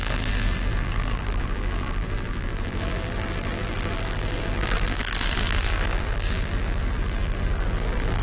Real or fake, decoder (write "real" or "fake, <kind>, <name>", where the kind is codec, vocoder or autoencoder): fake, vocoder, BigVGAN v2